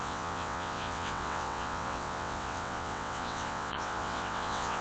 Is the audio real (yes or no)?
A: no